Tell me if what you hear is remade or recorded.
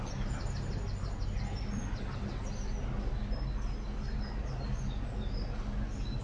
recorded